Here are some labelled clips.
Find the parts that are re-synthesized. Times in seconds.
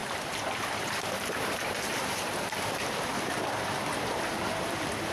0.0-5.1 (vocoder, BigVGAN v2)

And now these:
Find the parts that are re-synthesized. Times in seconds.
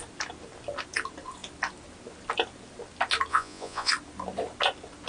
3.3-3.9 (vocoder, Vocos)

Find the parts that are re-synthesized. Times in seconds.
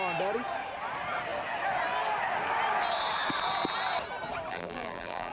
4.5-5.3 (vocoder, BigVGAN v2)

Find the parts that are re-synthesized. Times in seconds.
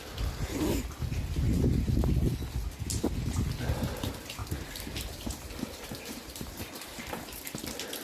4.4-7.4 (vocoder, BigVGAN v2)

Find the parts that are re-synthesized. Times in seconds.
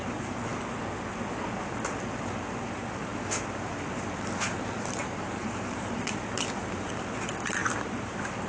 3.1-6.9 (vocoder, BigVGAN v2); 7.6-8.5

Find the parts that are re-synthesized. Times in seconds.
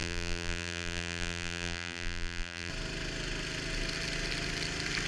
0.0-2.7 (vocoder, BigVGAN v2)